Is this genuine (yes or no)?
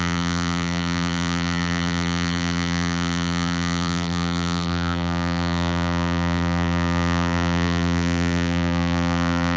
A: no